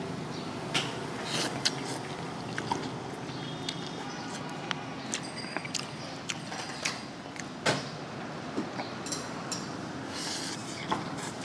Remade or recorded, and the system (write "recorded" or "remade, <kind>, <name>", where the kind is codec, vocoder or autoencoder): recorded